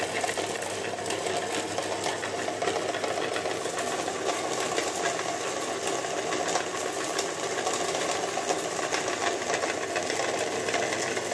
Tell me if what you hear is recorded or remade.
recorded